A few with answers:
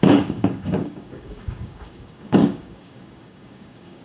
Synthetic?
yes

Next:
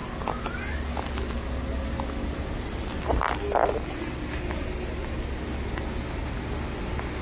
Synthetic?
no